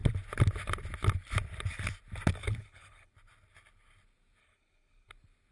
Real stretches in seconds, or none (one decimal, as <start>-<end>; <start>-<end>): 0.0-2.4; 3.1-4.4; 5.1-5.5

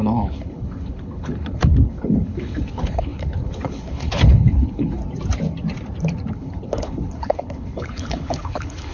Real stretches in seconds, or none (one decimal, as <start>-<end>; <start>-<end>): 5.0-6.3